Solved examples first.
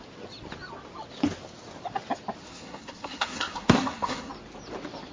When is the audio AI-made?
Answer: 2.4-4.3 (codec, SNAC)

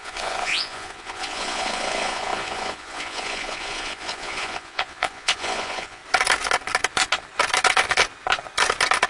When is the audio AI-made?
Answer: 0.0-6.0 (vocoder, Vocos)